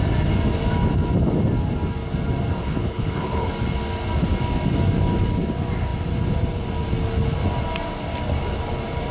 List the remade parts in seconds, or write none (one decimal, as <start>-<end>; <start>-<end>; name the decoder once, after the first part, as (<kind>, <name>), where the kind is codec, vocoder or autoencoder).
2.6-3.5 (codec, HILCodec)